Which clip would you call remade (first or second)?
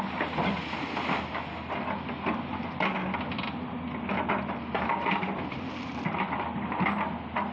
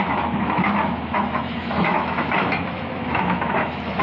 second